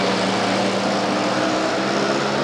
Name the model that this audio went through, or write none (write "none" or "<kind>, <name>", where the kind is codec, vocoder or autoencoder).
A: none